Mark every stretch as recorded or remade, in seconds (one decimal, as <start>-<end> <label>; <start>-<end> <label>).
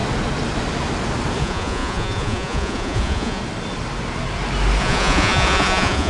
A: 0.0-1.4 recorded; 1.4-3.4 remade; 3.4-4.8 recorded; 4.8-6.1 remade